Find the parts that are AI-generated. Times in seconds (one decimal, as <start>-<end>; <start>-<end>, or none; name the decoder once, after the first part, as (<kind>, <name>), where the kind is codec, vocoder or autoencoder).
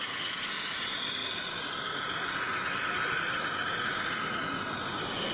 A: none